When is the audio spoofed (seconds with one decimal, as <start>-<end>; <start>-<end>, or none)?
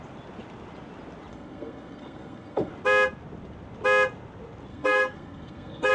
1.3-2.7; 4.7-5.9